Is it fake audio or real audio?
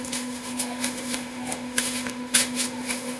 fake